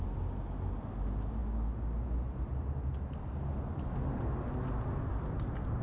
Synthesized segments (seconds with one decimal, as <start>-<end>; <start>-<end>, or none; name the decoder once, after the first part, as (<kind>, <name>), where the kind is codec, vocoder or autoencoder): none